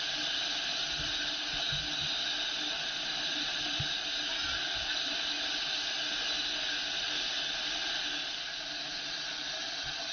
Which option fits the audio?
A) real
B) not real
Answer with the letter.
A